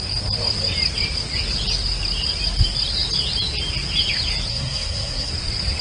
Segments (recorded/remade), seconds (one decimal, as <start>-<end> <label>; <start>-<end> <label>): 0.0-4.5 recorded; 4.5-5.3 remade; 5.3-5.8 recorded